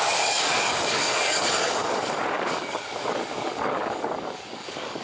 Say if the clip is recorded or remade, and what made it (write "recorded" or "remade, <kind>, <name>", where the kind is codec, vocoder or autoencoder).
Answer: remade, codec, DAC